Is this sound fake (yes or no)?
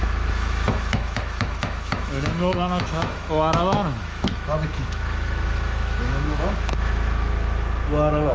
yes